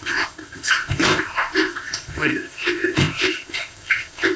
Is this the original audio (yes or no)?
no